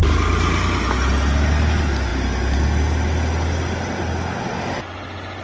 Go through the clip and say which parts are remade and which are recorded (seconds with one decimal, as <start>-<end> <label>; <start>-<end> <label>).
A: 0.0-5.4 recorded